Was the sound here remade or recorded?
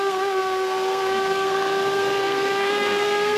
remade